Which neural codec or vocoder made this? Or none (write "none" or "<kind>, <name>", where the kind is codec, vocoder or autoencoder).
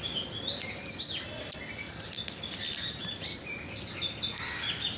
none